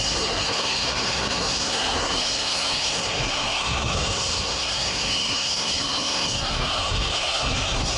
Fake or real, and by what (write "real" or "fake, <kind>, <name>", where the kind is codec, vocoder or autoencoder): fake, codec, SNAC